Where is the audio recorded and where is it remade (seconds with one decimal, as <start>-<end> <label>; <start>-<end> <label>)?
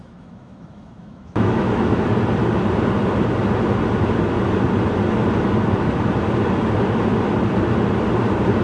0.0-2.1 remade; 2.1-8.6 recorded